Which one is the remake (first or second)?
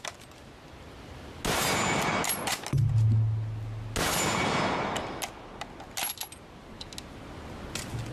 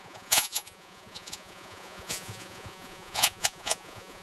second